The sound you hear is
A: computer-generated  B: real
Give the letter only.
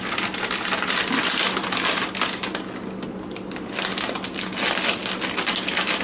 B